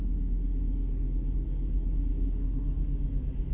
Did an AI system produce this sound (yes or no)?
yes